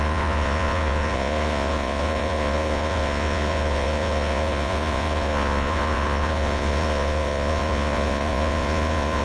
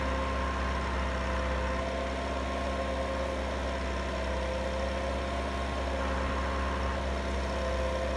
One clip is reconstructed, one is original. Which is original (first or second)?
second